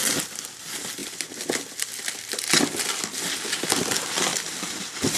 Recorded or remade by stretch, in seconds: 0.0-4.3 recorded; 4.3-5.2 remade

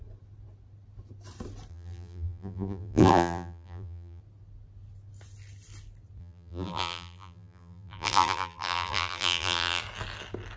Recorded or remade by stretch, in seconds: 0.0-1.7 recorded; 1.7-4.2 remade; 4.2-6.2 recorded; 6.2-9.8 remade; 9.8-10.6 recorded

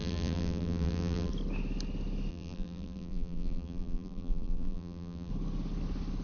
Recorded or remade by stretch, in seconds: 0.0-1.3 remade; 1.3-2.3 recorded; 2.3-5.3 remade; 5.3-6.2 recorded